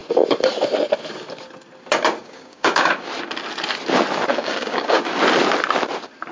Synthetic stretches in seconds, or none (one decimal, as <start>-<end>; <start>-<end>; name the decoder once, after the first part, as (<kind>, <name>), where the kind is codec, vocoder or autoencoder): 2.2-3.1 (codec, DAC); 4.3-5.1